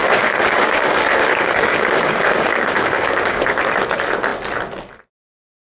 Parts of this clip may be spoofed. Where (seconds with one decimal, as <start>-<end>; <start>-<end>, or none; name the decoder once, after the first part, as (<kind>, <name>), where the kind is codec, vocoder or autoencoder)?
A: 0.0-3.4 (codec, DAC)